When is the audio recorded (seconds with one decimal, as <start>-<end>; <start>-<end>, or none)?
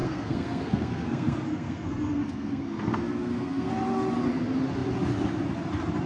3.7-6.1